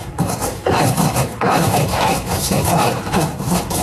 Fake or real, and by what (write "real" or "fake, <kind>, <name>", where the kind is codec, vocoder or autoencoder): fake, codec, SNAC